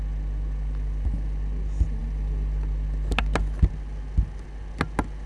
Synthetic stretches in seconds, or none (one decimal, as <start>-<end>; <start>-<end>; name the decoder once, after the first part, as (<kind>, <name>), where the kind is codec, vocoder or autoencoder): none